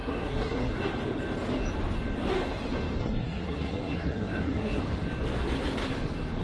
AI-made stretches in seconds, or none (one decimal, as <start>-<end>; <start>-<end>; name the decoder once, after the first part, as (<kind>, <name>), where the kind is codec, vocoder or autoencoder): 0.0-0.7 (codec, SNAC); 3.0-4.8